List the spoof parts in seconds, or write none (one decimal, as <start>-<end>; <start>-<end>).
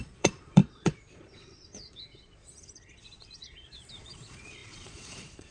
0.0-5.5